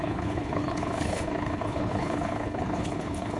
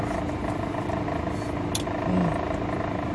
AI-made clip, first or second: first